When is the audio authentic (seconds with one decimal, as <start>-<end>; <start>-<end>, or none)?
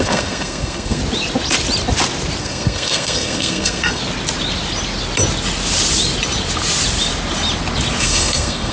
1.0-2.4; 4.0-8.0